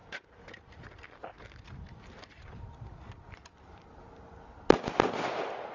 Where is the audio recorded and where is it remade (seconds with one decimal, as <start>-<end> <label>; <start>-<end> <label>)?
0.0-5.7 recorded